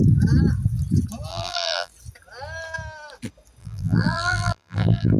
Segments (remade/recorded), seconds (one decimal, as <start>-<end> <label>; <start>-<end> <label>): 0.0-1.3 recorded; 1.3-1.9 remade; 1.9-3.6 recorded; 3.6-5.2 remade